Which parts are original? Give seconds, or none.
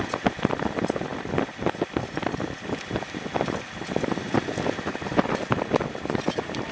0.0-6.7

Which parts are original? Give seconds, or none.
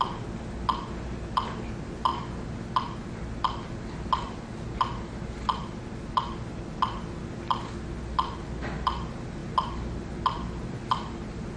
0.0-11.6